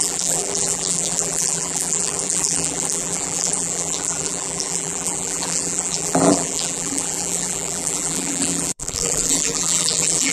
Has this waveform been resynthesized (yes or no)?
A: yes